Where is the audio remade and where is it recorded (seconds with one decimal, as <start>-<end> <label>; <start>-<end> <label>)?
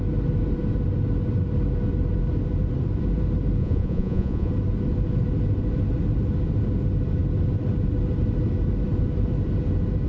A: 0.0-3.6 recorded; 3.6-4.5 remade; 4.5-10.1 recorded